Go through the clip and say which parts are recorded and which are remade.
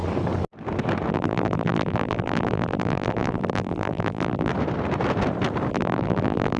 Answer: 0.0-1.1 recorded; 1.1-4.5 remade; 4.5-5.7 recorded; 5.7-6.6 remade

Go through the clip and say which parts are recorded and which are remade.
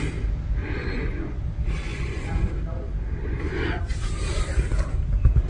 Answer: 0.0-0.6 recorded; 0.6-1.4 remade; 1.4-1.9 recorded; 1.9-2.5 remade; 2.5-3.2 recorded; 3.2-3.8 remade; 3.8-5.5 recorded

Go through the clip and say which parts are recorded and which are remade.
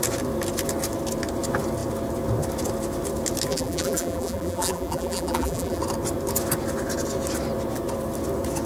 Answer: 0.0-3.5 recorded; 3.5-5.8 remade; 5.8-8.7 recorded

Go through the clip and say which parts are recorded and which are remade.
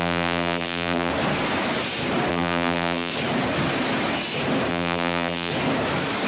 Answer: 0.0-1.1 remade; 1.1-2.3 recorded; 2.3-3.1 remade; 3.1-4.7 recorded; 4.7-5.5 remade; 5.5-6.3 recorded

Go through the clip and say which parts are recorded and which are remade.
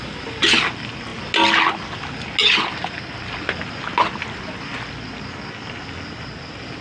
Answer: 0.0-6.8 recorded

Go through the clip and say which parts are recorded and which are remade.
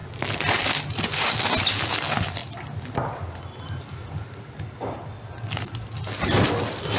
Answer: 0.0-7.0 recorded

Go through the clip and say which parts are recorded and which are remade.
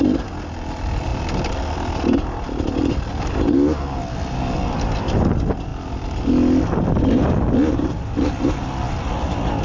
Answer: 0.0-9.6 recorded